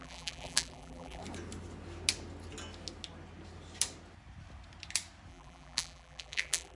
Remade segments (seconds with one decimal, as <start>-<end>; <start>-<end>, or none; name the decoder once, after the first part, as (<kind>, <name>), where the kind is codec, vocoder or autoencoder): 0.0-1.2 (vocoder, BigVGAN v2); 5.3-6.8